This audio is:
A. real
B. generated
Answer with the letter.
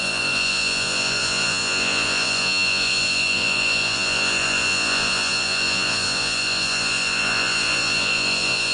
B